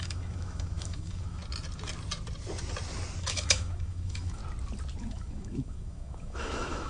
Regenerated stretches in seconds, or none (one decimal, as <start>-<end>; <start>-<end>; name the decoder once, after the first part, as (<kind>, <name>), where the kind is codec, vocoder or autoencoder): 0.0-1.4 (autoencoder, DAC-VAE); 3.2-4.4; 5.0-6.9